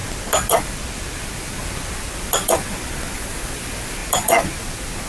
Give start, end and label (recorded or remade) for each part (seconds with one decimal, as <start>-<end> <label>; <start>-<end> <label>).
0.0-5.1 recorded